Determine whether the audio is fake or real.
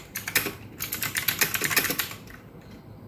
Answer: fake